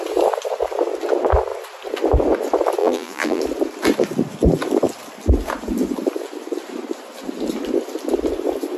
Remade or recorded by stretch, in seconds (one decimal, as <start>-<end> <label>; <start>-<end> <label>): 0.0-2.8 recorded; 2.8-3.4 remade; 3.4-8.8 recorded